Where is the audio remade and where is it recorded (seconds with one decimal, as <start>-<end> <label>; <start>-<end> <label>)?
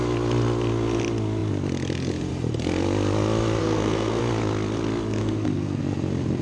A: 0.0-3.6 recorded; 3.6-4.2 remade; 4.2-5.2 recorded; 5.2-5.8 remade; 5.8-6.4 recorded